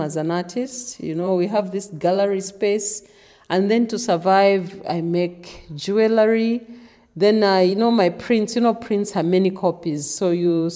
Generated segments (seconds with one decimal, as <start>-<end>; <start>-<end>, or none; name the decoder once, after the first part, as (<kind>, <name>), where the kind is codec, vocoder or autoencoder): 0.0-3.2 (vocoder, BigVGAN v2); 7.7-10.8